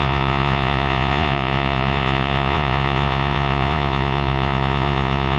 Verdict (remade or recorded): remade